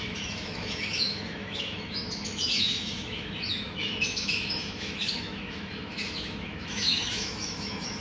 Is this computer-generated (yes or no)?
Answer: yes